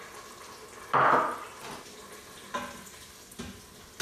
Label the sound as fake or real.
real